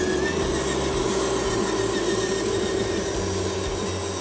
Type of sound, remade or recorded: recorded